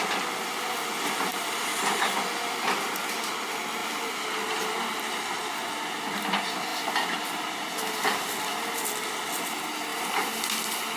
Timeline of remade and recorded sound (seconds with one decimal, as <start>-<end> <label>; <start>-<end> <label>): 0.0-1.3 recorded; 1.3-2.0 remade; 2.0-3.8 recorded; 3.8-5.2 remade; 5.2-6.7 recorded; 6.7-7.7 remade; 7.7-9.9 recorded; 9.9-11.0 remade